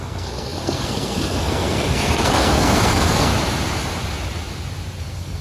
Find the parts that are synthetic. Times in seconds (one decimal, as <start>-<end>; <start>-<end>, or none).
0.0-3.3; 5.0-5.4